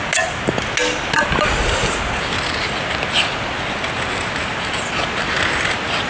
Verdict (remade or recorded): recorded